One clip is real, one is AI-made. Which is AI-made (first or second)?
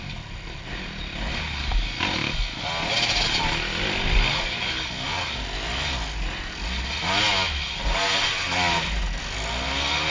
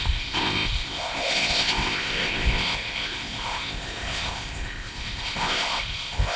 second